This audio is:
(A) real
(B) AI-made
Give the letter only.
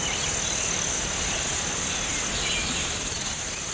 A